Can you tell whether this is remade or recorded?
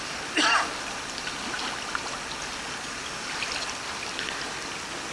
recorded